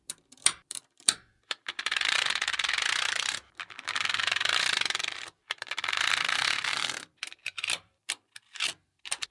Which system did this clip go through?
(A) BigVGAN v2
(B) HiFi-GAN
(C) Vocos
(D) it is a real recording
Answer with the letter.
A